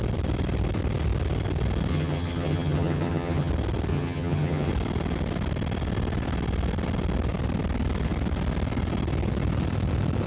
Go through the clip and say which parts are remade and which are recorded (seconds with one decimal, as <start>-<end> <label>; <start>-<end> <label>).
0.0-1.9 recorded; 1.9-3.5 remade; 3.5-3.9 recorded; 3.9-4.7 remade; 4.7-10.3 recorded